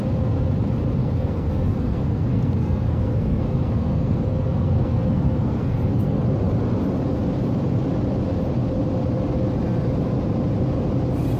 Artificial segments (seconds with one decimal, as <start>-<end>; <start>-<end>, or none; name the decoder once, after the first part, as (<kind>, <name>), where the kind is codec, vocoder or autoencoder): 1.0-6.2 (codec, SNAC)